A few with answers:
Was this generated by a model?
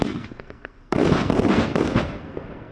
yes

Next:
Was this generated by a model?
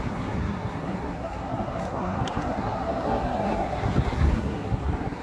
yes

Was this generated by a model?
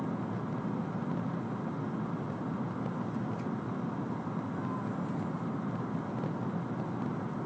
no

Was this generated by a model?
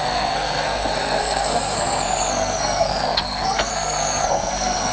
yes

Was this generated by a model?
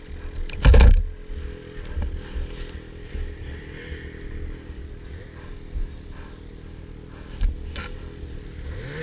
no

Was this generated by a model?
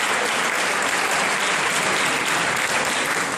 no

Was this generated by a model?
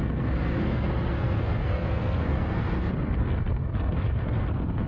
yes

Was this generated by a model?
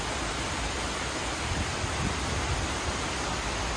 no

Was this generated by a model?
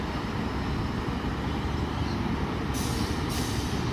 no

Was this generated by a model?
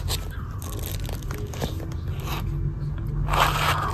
no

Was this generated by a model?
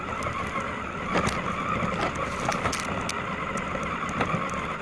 no